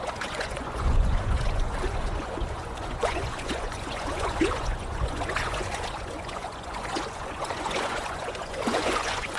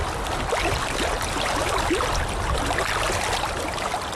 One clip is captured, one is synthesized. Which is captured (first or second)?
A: second